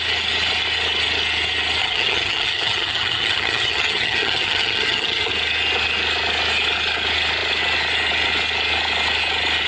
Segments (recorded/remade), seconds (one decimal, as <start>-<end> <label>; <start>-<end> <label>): 0.0-1.8 recorded; 1.8-5.3 remade; 5.3-9.7 recorded